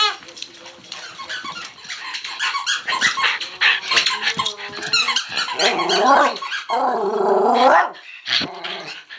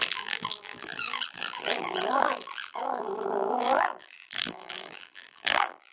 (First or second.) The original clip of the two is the first